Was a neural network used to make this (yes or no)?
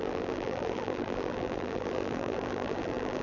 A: yes